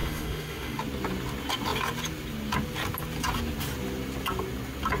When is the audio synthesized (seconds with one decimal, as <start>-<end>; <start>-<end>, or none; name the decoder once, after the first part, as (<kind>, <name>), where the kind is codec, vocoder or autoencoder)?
0.0-0.8 (autoencoder, DAC-VAE)